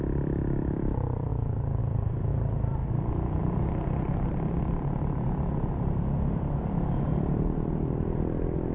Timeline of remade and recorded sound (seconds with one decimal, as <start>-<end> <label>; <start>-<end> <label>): 0.0-1.3 remade; 1.3-1.8 recorded; 1.8-2.3 remade; 2.3-3.4 recorded; 3.4-8.7 remade